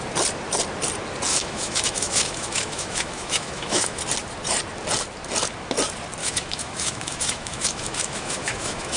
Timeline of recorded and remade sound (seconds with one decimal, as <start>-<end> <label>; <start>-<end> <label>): 0.0-1.3 recorded; 1.3-4.0 remade; 4.0-6.2 recorded; 6.2-9.0 remade